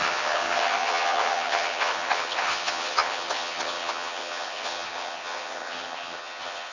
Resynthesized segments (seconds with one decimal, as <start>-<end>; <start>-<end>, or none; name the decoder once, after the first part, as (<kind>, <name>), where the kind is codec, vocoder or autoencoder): 0.0-6.7 (vocoder, HiFi-GAN)